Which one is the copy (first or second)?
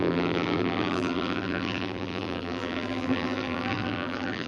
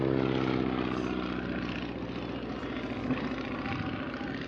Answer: first